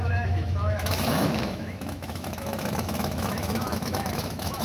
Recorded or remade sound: remade